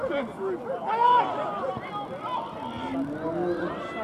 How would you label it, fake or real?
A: real